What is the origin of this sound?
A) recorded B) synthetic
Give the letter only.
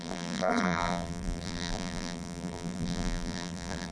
B